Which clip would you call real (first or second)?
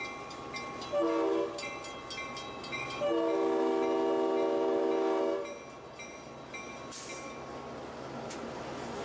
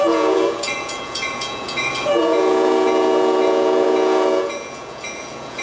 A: first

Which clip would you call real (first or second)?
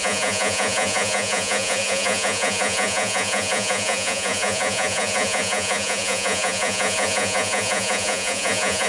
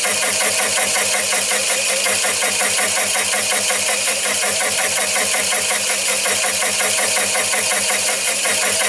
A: second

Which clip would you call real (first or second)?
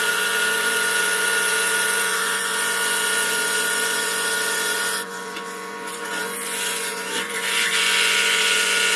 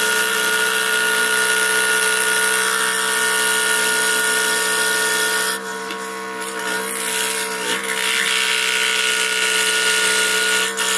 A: second